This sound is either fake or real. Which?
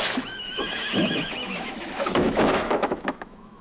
fake